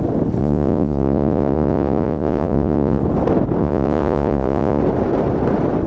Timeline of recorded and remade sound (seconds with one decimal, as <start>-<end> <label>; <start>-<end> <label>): 0.0-0.4 recorded; 0.4-3.0 remade; 3.0-3.6 recorded; 3.6-4.8 remade; 4.8-5.9 recorded